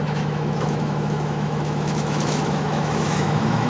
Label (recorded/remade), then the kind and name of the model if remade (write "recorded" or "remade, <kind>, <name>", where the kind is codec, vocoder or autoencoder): remade, autoencoder, DAC-VAE